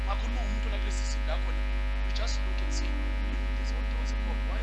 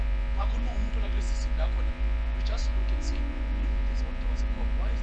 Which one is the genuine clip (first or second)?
first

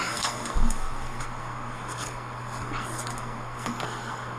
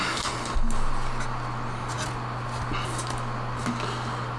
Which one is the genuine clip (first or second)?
second